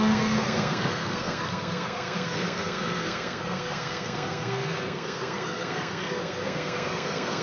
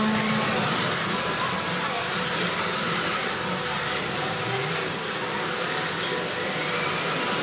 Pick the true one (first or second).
second